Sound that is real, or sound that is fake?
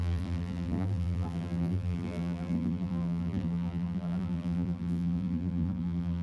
fake